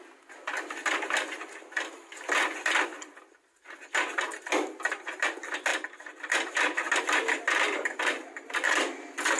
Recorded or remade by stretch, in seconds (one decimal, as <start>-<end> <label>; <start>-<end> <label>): 0.0-9.4 recorded